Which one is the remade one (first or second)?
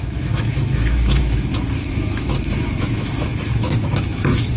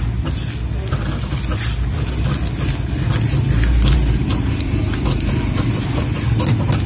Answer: first